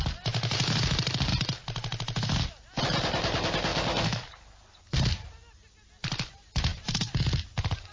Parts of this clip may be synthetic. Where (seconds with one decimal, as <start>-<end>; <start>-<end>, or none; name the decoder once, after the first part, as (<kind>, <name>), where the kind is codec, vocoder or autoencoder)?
none